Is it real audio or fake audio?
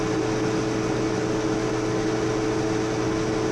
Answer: real